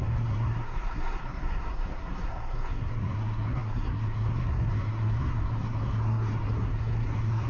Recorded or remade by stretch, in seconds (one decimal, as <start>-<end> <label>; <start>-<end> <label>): 0.0-7.5 remade